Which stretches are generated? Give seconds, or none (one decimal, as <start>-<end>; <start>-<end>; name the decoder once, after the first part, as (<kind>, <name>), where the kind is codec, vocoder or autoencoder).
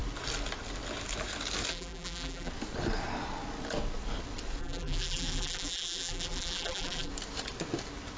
1.7-2.5 (vocoder, BigVGAN v2); 4.6-7.1